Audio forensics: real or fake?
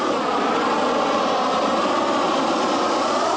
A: real